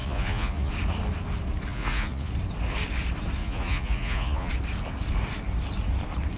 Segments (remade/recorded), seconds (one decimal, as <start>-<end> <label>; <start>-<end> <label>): 0.0-0.7 remade; 0.7-1.7 recorded; 1.7-2.3 remade; 2.3-3.4 recorded; 3.4-4.5 remade; 4.5-6.4 recorded